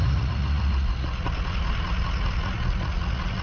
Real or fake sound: fake